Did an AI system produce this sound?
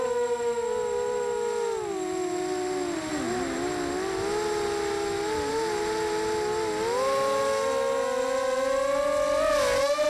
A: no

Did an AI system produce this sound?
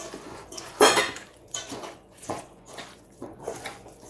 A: yes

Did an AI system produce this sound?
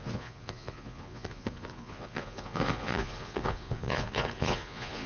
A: yes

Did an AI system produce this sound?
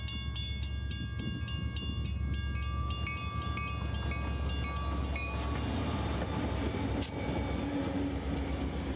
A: no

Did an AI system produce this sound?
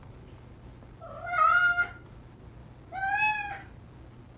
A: no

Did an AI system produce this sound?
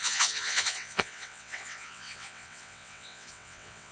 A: yes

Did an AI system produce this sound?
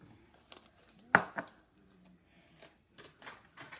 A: no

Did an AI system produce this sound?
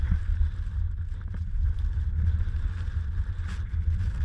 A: no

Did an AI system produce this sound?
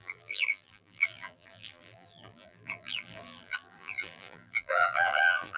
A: yes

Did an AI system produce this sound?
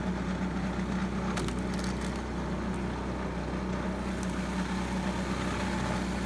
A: no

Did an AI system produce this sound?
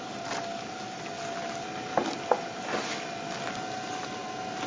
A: no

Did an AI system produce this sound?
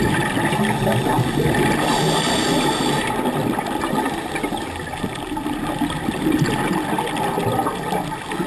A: no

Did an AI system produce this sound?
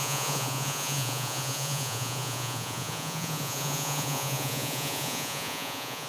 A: yes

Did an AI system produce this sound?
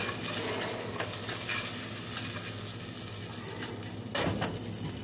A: no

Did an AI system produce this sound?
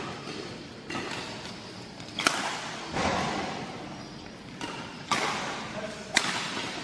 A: no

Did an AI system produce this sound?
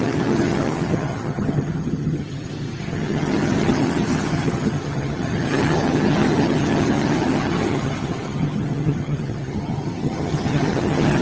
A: yes